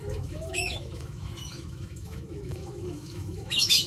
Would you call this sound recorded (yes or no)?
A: no